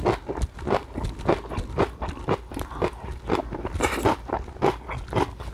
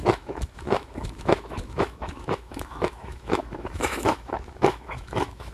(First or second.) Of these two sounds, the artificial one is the second